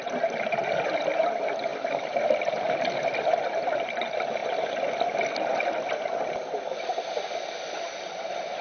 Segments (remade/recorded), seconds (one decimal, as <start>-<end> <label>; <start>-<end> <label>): 0.0-8.6 recorded